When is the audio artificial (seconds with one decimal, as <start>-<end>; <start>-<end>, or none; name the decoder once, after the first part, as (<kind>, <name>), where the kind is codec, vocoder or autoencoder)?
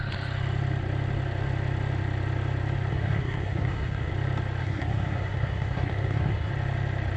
2.9-4.1 (codec, SNAC); 4.6-6.5